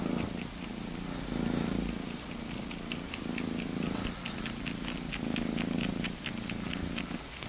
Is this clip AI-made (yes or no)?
no